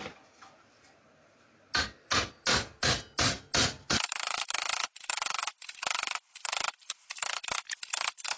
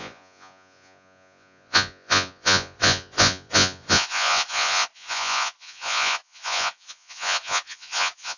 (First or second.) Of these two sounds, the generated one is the second